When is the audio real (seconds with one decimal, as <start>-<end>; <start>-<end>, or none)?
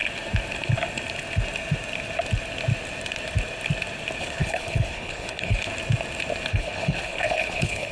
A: 0.0-4.2; 5.7-6.5